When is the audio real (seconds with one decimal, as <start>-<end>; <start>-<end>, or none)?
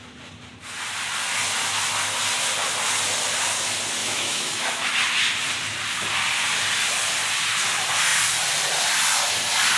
0.0-4.0; 4.9-9.8